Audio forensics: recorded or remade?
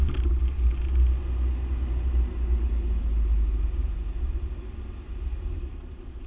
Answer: recorded